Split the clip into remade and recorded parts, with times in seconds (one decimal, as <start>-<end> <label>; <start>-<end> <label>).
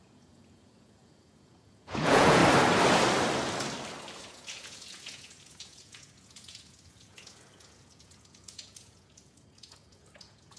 0.0-2.4 remade; 2.4-4.2 recorded; 4.2-10.6 remade